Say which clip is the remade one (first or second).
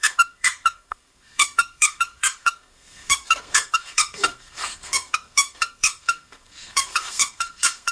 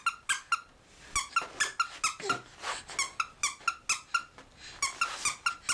first